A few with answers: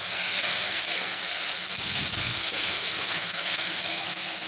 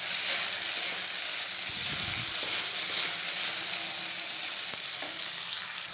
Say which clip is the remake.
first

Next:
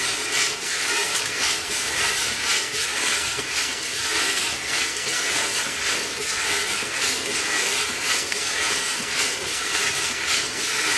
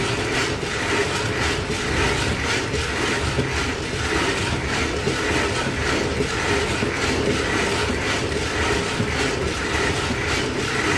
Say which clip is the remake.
first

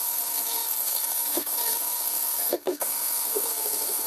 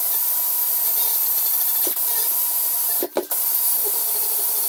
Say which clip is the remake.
first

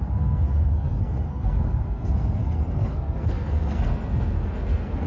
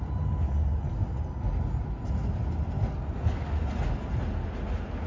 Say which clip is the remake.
first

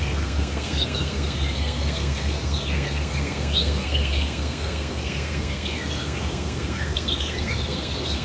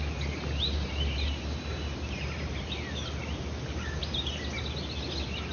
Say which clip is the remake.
first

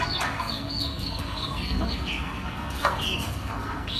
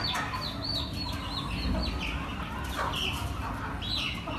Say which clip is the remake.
first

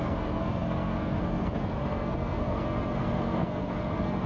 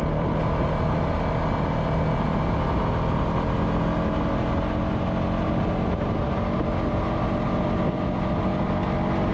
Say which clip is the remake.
first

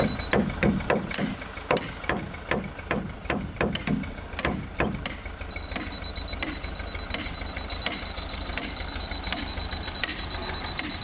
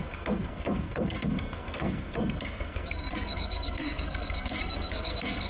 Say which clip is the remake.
second